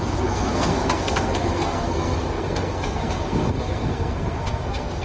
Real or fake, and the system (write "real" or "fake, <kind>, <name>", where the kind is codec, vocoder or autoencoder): fake, codec, SNAC